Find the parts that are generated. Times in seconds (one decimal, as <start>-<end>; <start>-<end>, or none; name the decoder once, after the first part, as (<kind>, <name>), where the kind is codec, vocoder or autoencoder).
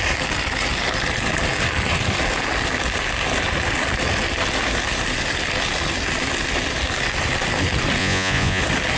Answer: 8.0-8.6 (vocoder, Vocos)